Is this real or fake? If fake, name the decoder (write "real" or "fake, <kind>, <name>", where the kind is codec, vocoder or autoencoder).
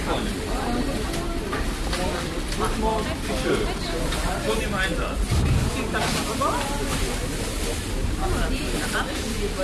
real